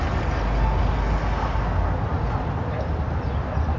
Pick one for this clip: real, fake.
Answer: real